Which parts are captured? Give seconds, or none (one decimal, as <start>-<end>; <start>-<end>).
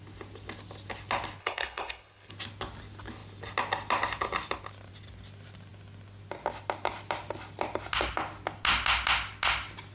0.0-1.4; 2.3-9.9